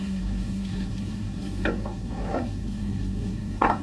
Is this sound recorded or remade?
remade